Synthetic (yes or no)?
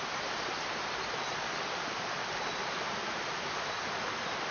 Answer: no